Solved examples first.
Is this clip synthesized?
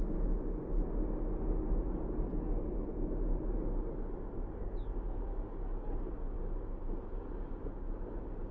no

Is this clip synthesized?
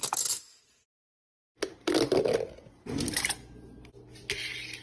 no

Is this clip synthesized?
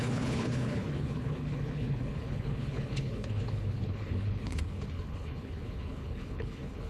yes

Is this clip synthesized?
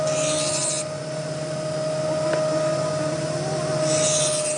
no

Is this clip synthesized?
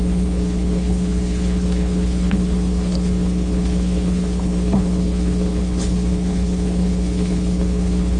yes